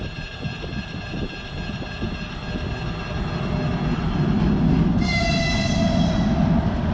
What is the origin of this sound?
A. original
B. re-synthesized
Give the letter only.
A